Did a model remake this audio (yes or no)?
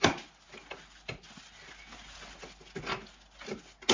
no